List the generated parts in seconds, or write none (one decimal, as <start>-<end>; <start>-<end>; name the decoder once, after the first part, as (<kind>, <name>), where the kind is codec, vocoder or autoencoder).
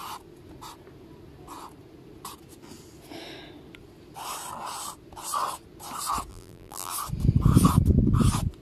6.3-6.9 (vocoder, BigVGAN v2)